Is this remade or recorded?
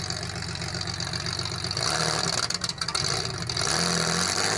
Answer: recorded